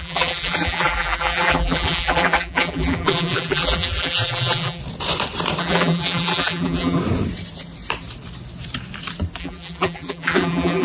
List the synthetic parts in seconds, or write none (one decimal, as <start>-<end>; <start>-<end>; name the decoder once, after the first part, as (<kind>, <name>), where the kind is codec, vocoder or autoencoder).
0.0-4.8 (vocoder, BigVGAN v2); 5.6-7.0; 9.4-10.8